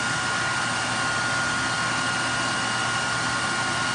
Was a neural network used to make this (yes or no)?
no